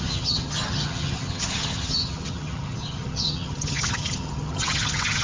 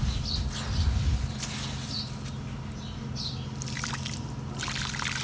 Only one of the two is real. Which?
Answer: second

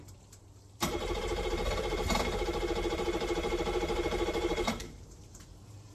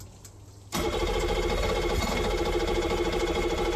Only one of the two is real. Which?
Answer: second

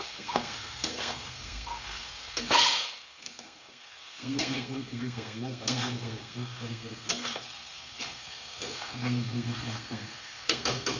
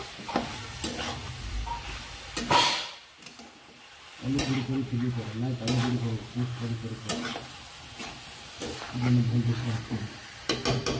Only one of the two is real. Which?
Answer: second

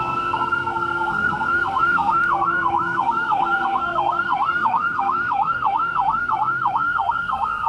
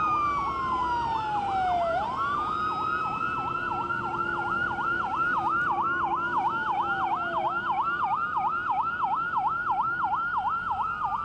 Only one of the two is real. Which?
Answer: second